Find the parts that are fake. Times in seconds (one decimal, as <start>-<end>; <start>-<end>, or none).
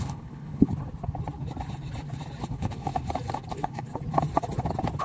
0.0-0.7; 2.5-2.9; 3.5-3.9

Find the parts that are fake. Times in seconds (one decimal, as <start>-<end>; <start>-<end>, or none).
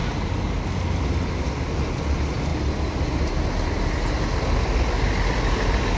none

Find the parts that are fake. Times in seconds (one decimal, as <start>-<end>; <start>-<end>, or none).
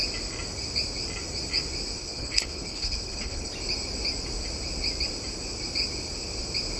2.0-3.5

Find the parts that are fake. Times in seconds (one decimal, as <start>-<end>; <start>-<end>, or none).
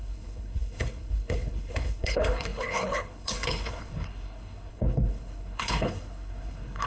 0.0-6.9